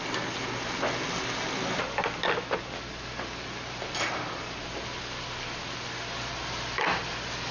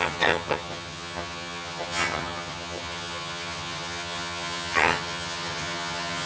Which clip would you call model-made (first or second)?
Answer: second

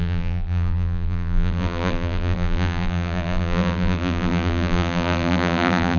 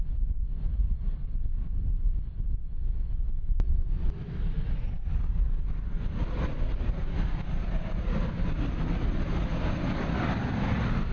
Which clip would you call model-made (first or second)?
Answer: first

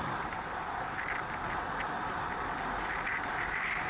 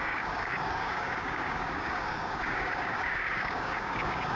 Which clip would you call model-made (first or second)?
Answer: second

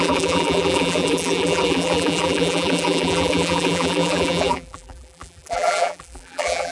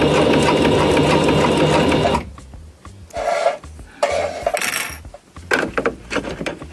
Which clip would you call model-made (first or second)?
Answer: first